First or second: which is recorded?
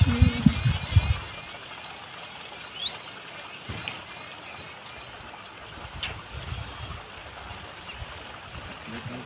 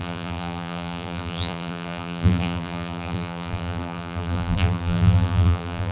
first